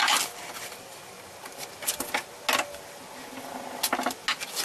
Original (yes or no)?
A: yes